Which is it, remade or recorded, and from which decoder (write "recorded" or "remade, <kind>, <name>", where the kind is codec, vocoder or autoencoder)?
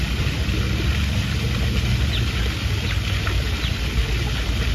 recorded